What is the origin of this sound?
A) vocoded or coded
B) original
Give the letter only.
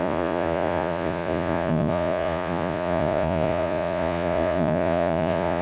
A